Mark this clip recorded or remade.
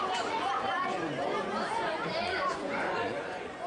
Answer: remade